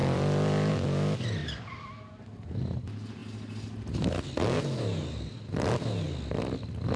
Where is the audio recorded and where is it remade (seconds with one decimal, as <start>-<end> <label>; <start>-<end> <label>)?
0.0-0.7 remade; 0.7-7.0 recorded